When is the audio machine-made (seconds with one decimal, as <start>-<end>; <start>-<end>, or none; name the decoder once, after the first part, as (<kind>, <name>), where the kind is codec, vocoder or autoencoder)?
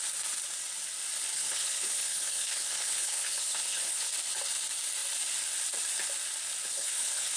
1.3-4.1 (codec, HILCodec); 6.7-7.4